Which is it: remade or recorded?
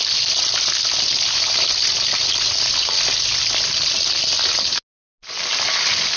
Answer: recorded